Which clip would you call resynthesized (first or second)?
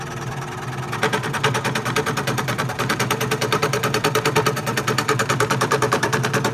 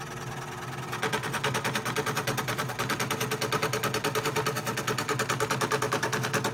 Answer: first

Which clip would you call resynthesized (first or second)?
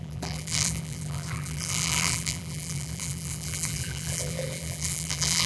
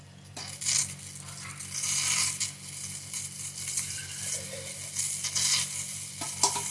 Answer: first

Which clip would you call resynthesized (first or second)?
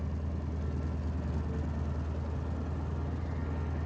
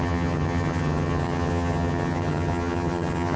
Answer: second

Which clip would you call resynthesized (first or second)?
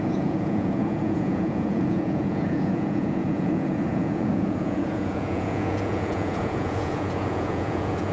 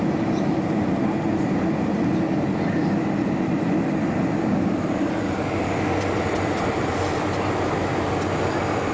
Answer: first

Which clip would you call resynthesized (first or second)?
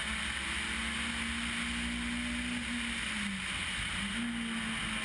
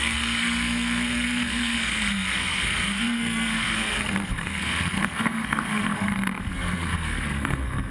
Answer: second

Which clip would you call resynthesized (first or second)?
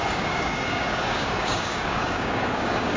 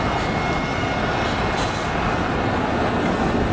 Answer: first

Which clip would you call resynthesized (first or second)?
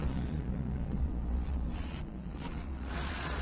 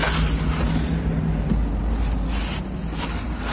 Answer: first